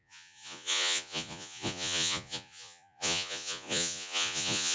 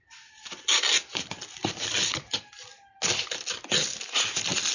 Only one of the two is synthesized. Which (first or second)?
first